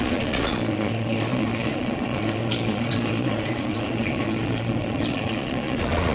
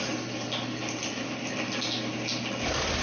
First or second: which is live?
second